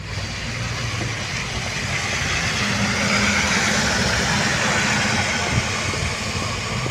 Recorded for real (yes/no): yes